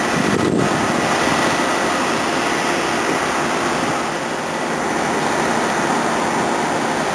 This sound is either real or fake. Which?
real